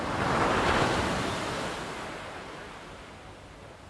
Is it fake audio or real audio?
real